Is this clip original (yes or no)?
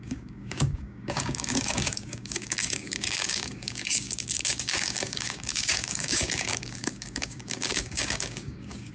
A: no